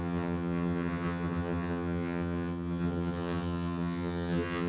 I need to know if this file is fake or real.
fake